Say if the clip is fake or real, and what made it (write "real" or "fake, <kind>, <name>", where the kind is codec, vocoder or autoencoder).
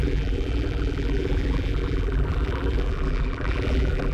fake, vocoder, BigVGAN v2